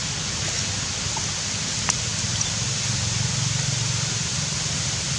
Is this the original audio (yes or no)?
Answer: no